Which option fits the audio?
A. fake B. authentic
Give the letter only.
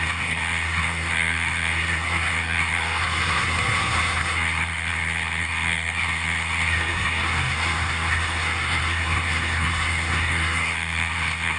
A